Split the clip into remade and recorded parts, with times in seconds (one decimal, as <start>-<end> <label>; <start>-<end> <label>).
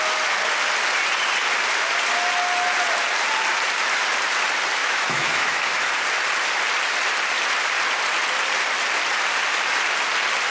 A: 0.0-4.8 recorded; 4.8-5.9 remade; 5.9-10.5 recorded